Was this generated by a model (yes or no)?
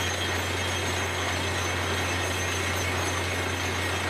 no